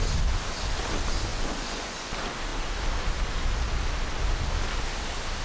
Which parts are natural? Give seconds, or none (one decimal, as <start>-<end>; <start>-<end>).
0.0-1.3; 2.1-5.4